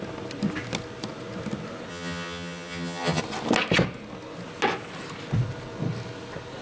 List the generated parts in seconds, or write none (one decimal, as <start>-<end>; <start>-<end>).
1.9-3.2